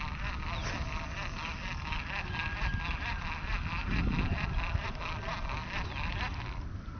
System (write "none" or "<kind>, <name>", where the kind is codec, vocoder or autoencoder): none